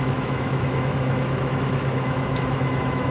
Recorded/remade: remade